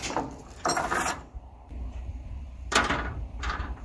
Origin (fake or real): fake